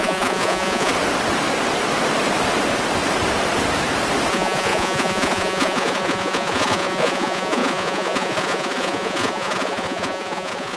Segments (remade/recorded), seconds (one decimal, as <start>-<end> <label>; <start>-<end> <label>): 0.0-0.9 remade; 0.9-4.3 recorded; 4.3-10.8 remade